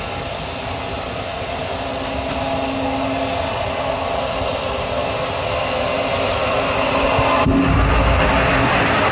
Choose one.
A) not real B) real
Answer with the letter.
B